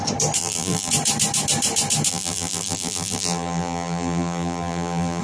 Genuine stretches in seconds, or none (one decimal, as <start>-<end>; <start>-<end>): 0.0-0.4; 0.9-2.1